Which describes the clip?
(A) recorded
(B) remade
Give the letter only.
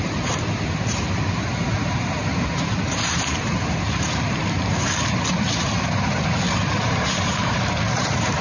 B